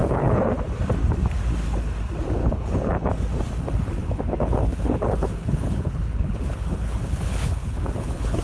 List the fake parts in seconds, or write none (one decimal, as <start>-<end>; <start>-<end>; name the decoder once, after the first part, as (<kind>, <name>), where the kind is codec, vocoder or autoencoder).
0.0-0.5 (codec, HILCodec); 2.4-3.1; 4.0-8.4